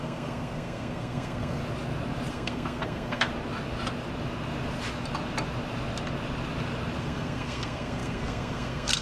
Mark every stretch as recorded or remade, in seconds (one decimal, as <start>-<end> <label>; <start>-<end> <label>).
0.0-1.6 remade; 1.6-2.3 recorded; 2.3-3.3 remade; 3.3-7.0 recorded; 7.0-9.0 remade